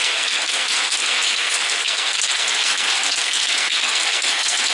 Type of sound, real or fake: fake